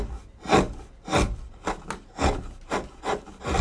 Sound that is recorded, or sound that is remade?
recorded